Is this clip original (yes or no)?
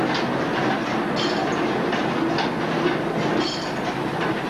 yes